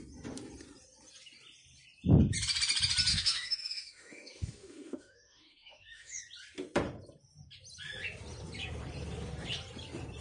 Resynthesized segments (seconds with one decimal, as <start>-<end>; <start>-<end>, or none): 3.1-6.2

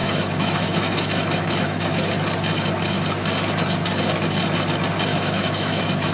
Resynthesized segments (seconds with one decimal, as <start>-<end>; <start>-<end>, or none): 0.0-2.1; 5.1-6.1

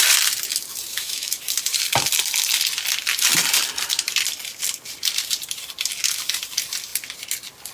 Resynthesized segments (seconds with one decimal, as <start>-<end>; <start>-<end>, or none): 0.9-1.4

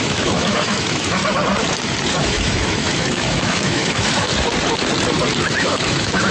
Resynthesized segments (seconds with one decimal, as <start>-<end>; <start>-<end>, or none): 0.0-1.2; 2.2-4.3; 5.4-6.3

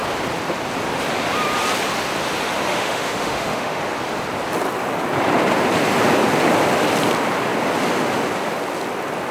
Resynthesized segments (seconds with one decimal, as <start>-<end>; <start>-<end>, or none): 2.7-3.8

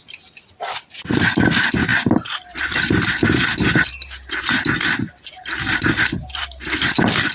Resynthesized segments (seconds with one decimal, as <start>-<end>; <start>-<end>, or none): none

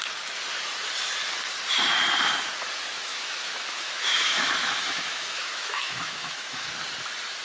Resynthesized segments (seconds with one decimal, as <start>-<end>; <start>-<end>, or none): 3.1-6.7

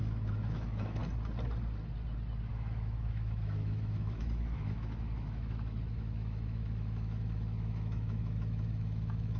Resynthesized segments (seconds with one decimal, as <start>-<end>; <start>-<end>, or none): 0.0-1.0; 2.5-9.4